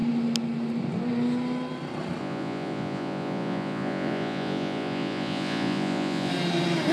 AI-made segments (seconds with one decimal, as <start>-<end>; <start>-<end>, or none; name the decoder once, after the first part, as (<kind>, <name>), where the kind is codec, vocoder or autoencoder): 2.2-6.3 (vocoder, Vocos)

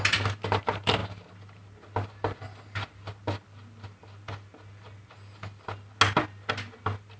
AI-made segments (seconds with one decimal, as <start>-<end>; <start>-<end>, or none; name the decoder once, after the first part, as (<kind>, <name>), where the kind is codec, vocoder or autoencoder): none

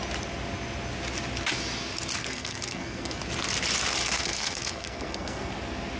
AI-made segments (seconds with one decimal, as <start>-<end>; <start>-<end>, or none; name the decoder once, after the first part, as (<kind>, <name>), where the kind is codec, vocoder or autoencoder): 2.2-3.2 (codec, SNAC); 4.0-5.5

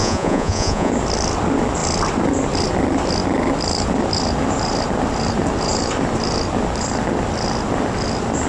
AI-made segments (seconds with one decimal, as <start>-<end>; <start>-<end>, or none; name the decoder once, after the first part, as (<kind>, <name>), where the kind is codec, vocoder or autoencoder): 0.0-0.9 (vocoder, Vocos)